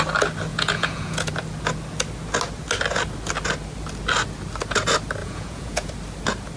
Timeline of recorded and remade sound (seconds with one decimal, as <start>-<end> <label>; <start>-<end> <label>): 0.0-0.5 recorded; 0.5-1.3 remade; 1.3-5.2 recorded; 5.2-5.9 remade; 5.9-6.6 recorded